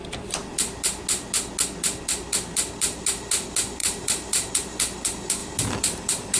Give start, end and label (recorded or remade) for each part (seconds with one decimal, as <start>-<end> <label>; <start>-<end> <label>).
0.0-3.8 recorded; 3.8-4.5 remade; 4.5-6.4 recorded